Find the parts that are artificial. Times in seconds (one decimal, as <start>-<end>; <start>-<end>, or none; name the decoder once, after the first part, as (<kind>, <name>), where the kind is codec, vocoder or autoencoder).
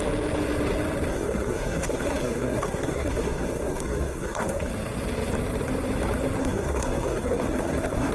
1.1-4.7 (codec, SNAC); 6.4-8.1